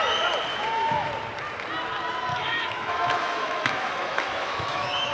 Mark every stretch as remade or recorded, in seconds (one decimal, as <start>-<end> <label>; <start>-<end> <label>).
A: 0.0-0.5 recorded; 0.5-1.1 remade; 1.1-2.3 recorded; 2.3-5.1 remade